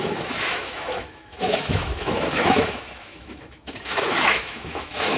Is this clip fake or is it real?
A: fake